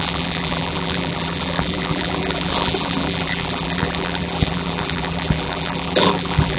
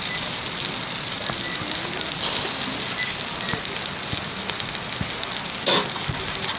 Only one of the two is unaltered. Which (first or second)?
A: second